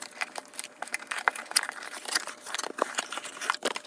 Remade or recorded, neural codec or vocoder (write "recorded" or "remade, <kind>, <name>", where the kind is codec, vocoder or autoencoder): remade, vocoder, BigVGAN v2